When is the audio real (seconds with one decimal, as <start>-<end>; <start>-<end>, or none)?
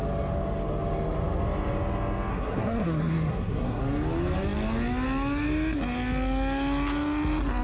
0.0-2.3; 3.8-7.6